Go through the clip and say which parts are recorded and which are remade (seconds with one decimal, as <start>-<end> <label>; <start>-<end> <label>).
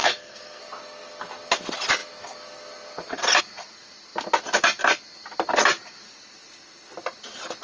0.0-0.6 remade; 0.6-7.6 recorded